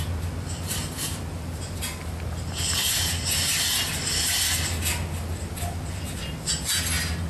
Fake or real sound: real